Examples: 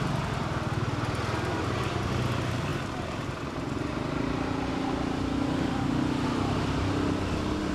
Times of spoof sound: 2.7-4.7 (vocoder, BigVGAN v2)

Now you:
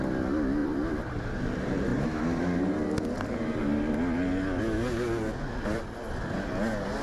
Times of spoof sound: 0.6-1.2 (vocoder, BigVGAN v2)

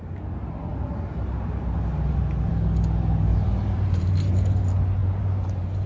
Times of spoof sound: 3.3-4.6 (vocoder, BigVGAN v2); 5.0-5.9

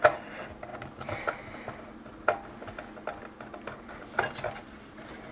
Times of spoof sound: none

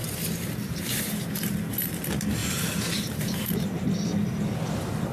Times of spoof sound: 0.0-1.6 (vocoder, BigVGAN v2); 2.4-3.9

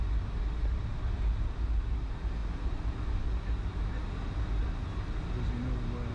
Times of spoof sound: none

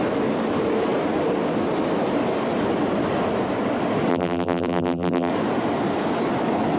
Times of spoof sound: 4.1-5.3 (vocoder, BigVGAN v2)

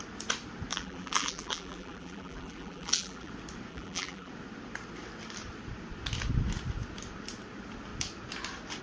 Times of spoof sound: 0.7-3.3 (vocoder, BigVGAN v2); 3.7-4.3